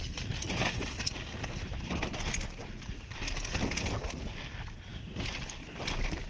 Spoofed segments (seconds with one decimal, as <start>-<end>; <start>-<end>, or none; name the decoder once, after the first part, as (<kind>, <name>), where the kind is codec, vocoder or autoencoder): none